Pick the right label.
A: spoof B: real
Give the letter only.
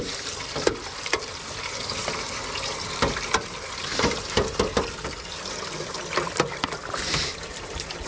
A